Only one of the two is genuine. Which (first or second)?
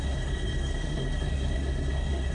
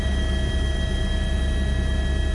second